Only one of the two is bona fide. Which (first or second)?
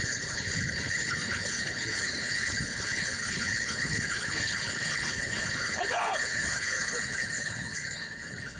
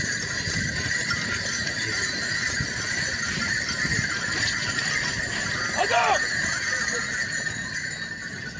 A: second